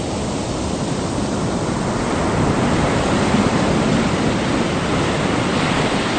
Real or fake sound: real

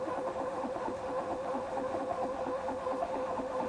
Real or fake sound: fake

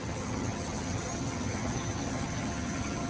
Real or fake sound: fake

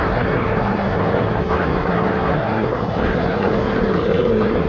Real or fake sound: fake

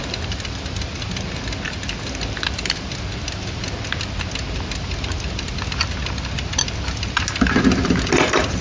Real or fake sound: real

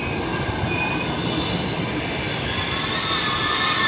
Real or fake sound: real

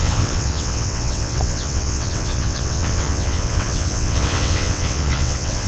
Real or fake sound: fake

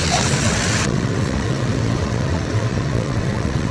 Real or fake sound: fake